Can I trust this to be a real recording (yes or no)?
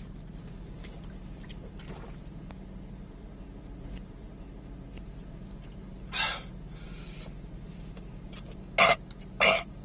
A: yes